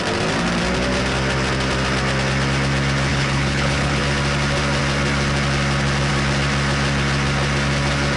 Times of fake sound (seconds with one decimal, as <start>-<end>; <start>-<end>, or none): 3.1-4.0